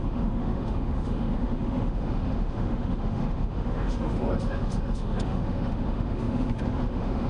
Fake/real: fake